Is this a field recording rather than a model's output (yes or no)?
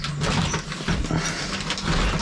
yes